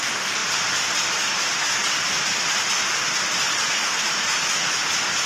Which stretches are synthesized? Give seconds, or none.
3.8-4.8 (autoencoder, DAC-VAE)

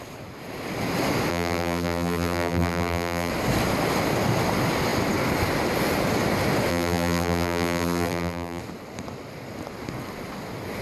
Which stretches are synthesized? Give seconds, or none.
1.3-3.3 (vocoder, BigVGAN v2); 6.7-8.6

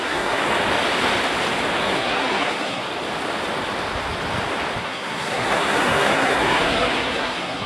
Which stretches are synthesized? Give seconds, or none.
0.0-0.4 (codec, SNAC); 1.8-2.8; 4.8-7.7

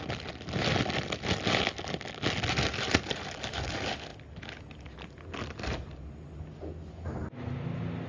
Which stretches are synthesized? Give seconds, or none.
none

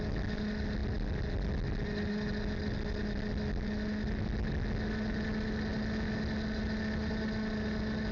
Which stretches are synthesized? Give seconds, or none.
none

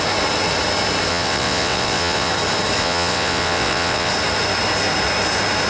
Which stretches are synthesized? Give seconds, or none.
1.1-2.3 (vocoder, WaveNeXt); 2.8-4.1

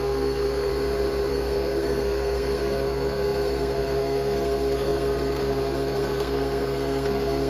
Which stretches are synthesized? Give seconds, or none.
0.0-0.7 (codec, SNAC); 1.3-7.5